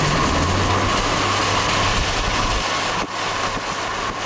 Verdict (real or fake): real